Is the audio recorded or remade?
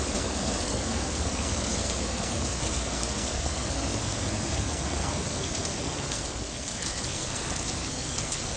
remade